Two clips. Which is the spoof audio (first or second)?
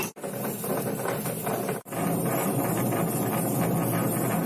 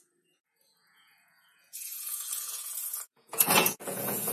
second